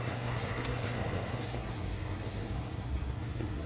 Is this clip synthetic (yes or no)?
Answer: yes